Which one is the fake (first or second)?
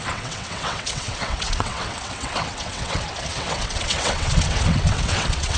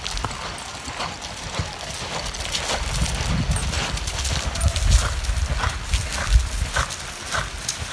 first